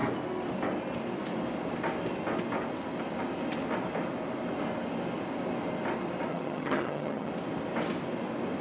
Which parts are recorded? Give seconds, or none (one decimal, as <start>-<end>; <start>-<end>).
0.0-6.3; 7.3-8.6